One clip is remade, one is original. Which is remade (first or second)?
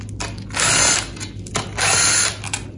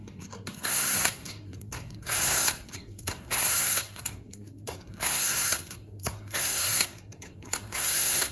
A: second